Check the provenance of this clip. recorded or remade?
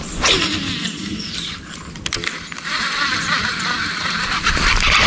recorded